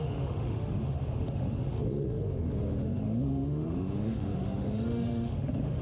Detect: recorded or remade remade